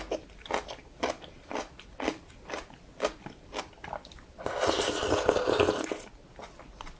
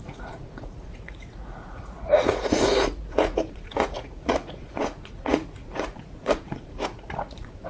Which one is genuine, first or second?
first